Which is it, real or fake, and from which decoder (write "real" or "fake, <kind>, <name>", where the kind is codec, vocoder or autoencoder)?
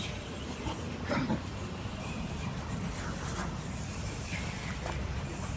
real